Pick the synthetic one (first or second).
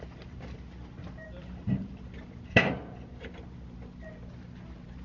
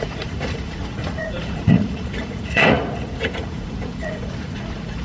second